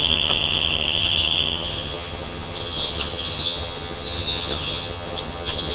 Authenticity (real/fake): fake